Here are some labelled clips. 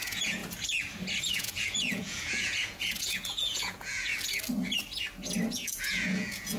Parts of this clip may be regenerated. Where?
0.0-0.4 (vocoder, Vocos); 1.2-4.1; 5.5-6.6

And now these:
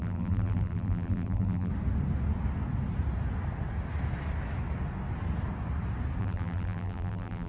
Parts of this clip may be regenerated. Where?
0.0-1.7 (vocoder, BigVGAN v2); 6.2-7.5

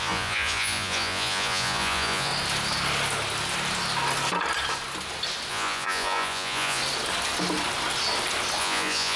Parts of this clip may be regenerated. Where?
0.0-2.3 (vocoder, Vocos); 5.5-6.8; 8.6-9.2

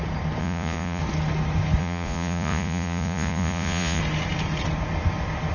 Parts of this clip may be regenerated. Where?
0.4-1.0 (vocoder, Vocos); 1.8-4.0

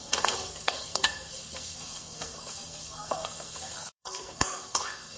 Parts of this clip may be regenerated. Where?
0.0-5.2 (codec, SNAC)

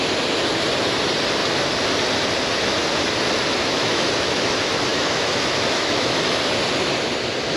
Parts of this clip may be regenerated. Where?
3.6-4.5 (autoencoder, DAC-VAE); 4.9-6.4

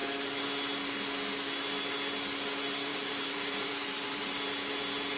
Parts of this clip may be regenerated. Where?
2.9-4.3 (vocoder, BigVGAN v2)